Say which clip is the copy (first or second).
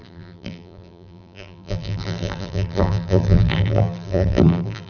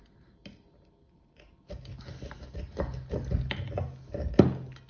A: first